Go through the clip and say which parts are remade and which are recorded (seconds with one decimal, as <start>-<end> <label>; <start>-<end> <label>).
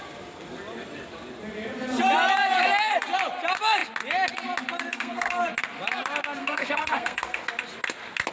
0.0-4.9 recorded; 4.9-5.4 remade; 5.4-6.4 recorded; 6.4-7.4 remade; 7.4-8.3 recorded